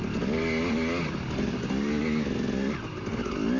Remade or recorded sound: recorded